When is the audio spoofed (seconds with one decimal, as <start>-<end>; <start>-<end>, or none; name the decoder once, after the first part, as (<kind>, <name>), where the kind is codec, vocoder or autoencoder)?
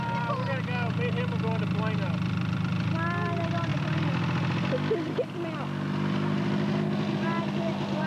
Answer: none